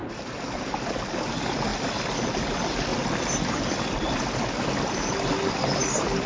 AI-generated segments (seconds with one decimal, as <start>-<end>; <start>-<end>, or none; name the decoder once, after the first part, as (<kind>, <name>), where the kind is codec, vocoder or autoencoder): 0.0-0.7 (vocoder, BigVGAN v2)